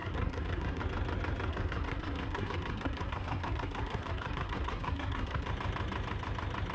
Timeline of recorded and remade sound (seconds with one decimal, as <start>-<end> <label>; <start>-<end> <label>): 0.0-0.8 remade; 0.8-1.5 recorded; 1.5-5.5 remade; 5.5-6.7 recorded